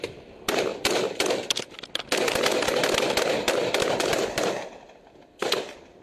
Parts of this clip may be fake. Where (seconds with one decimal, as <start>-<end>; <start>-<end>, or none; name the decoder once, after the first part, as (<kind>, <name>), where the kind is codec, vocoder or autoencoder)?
none